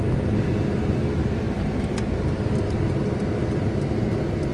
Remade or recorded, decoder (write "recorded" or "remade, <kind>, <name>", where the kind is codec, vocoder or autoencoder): recorded